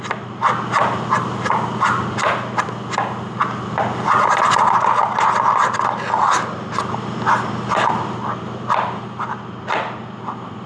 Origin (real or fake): real